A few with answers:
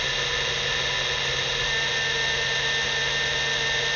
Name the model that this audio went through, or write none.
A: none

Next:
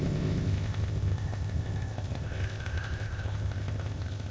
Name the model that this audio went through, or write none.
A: codec, ZipCodec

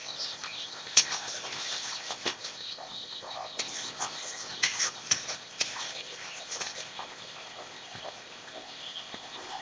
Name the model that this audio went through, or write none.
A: codec, ZipCodec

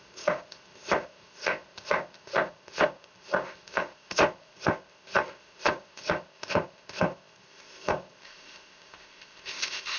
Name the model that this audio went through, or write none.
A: codec, ZipCodec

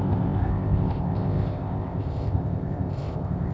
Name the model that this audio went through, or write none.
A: codec, ZipCodec